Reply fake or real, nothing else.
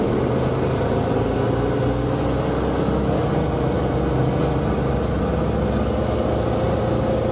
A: real